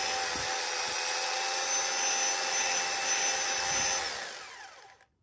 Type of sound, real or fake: real